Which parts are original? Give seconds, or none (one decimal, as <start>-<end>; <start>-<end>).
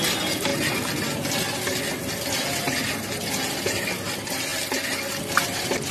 0.0-5.9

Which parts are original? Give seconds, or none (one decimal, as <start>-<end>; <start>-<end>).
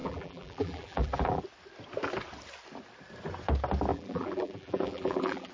1.4-3.9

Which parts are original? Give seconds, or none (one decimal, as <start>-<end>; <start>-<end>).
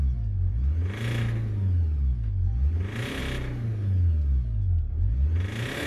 0.0-5.9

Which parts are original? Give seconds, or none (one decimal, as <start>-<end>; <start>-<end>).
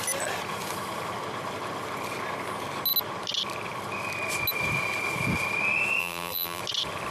0.0-6.0; 6.6-7.1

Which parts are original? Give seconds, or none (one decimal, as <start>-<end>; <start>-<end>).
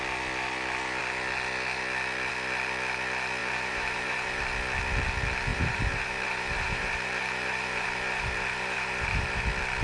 0.0-3.4; 4.4-5.5; 9.4-9.8